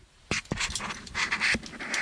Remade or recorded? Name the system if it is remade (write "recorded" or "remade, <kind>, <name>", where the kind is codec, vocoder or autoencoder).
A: recorded